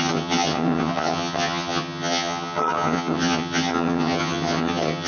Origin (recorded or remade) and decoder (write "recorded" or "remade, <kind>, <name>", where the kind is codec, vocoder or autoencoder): remade, vocoder, HiFi-GAN